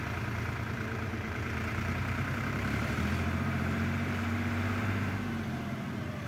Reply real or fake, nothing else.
fake